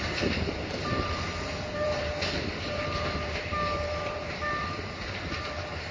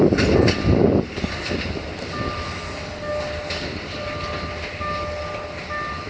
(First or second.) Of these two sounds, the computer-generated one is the first